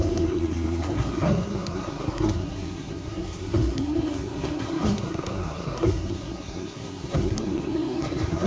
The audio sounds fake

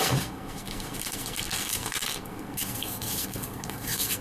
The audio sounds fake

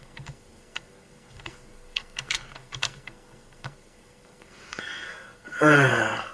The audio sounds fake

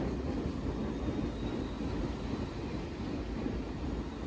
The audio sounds real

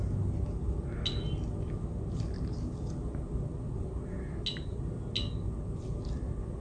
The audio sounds real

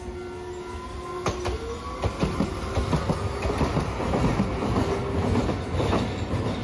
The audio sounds real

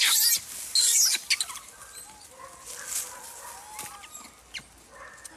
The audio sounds real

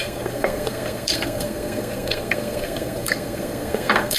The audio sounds fake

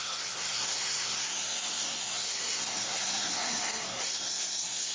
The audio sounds fake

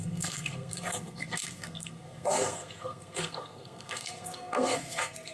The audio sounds fake